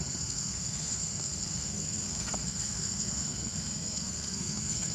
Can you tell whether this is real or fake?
fake